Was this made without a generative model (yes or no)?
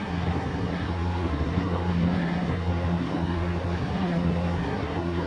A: no